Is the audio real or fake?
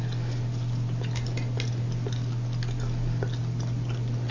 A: real